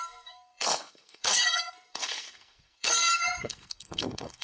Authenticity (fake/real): fake